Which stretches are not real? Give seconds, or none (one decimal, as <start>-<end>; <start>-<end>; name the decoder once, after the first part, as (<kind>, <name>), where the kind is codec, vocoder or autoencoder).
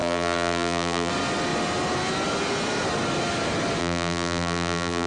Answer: 0.0-1.1 (vocoder, BigVGAN v2); 3.8-5.1